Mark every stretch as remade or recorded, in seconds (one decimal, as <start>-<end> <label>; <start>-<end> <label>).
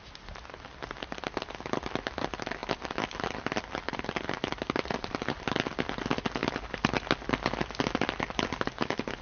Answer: 0.0-2.6 recorded; 2.6-5.4 remade; 5.4-6.4 recorded; 6.4-8.6 remade; 8.6-9.2 recorded